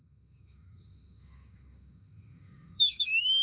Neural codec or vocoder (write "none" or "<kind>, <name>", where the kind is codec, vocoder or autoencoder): autoencoder, DAC-VAE